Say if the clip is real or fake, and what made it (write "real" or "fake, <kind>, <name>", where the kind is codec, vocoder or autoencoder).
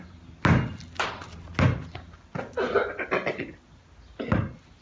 real